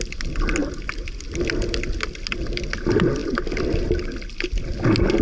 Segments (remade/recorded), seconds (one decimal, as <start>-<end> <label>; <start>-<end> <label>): 0.0-0.6 recorded; 0.6-1.4 remade; 1.4-5.2 recorded